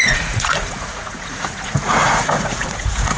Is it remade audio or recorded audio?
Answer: remade